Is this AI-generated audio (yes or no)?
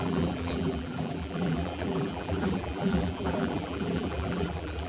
yes